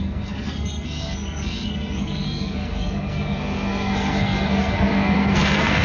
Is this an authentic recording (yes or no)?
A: no